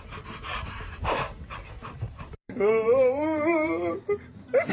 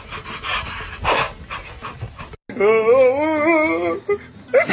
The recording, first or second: second